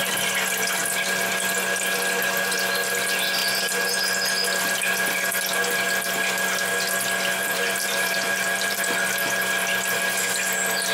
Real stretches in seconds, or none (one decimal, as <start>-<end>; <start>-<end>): 0.0-7.4; 8.8-10.9